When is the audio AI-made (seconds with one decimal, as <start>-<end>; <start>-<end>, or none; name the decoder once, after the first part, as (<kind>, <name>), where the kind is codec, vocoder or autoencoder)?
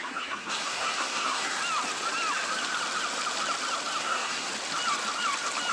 0.0-1.6 (codec, SNAC); 4.0-4.5